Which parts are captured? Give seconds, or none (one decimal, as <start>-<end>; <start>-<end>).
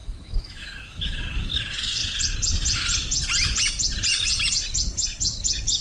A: 2.0-5.8